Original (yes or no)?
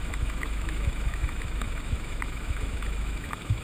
no